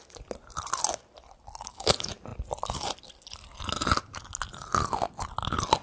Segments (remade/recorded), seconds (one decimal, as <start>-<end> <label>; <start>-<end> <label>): 0.0-5.8 recorded